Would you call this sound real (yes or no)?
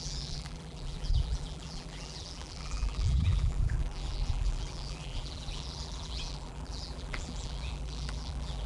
no